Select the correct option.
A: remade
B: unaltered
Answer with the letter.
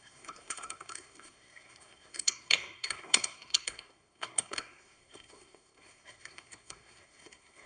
A